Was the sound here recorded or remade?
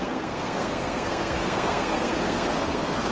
remade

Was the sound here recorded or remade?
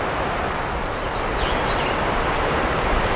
recorded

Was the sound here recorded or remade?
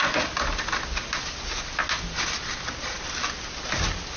recorded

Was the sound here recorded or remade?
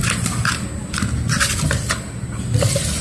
recorded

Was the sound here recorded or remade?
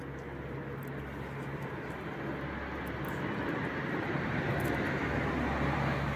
recorded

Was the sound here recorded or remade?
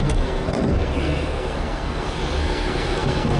remade